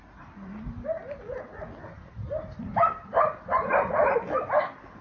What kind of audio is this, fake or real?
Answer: real